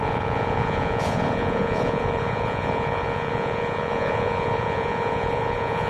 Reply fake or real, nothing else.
fake